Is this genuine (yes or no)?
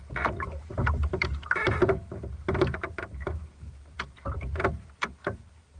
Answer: no